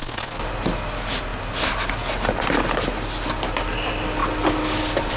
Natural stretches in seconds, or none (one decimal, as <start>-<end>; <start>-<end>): 0.0-5.2